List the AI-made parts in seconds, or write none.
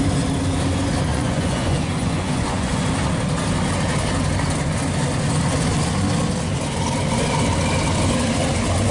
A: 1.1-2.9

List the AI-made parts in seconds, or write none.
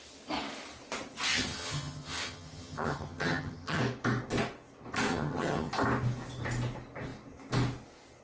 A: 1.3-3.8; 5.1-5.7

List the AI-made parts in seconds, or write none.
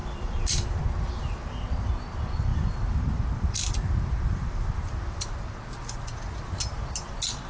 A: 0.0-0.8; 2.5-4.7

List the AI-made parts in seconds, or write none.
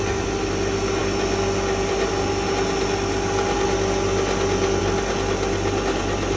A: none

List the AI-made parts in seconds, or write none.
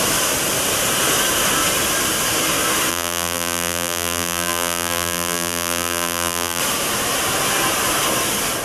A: 2.9-6.6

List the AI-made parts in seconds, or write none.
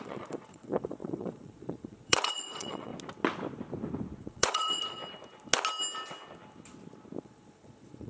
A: 0.0-2.9; 4.2-5.0; 7.2-8.1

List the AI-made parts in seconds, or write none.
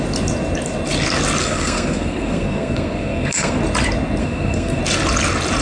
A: 1.4-3.6; 4.2-4.8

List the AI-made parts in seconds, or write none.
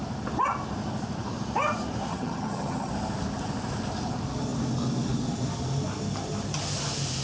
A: 2.1-2.9